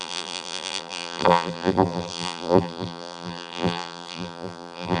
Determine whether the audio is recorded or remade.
remade